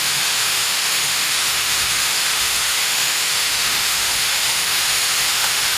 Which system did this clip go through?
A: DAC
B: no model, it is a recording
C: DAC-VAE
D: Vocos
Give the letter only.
C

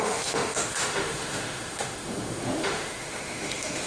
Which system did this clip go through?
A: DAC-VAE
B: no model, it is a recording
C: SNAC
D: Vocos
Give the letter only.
A